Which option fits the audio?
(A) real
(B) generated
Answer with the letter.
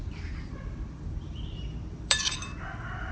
B